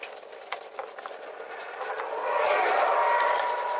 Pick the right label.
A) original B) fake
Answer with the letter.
B